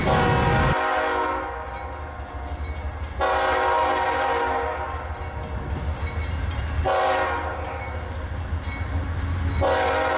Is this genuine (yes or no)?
yes